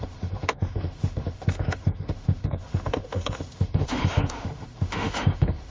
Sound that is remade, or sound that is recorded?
remade